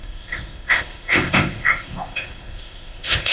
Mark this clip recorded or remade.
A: remade